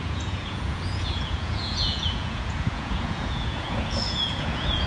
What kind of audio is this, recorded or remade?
remade